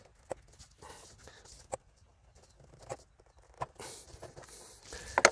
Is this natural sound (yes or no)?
yes